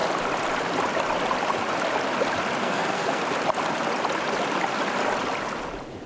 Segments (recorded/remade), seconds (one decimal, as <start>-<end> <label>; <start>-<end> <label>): 0.0-2.6 recorded; 2.6-3.2 remade; 3.2-6.1 recorded